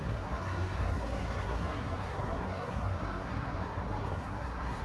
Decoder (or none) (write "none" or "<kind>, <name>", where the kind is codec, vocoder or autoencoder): codec, SNAC